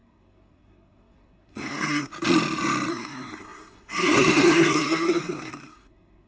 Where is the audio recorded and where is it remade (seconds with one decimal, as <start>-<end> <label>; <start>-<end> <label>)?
0.0-2.1 remade; 2.1-2.9 recorded; 2.9-6.3 remade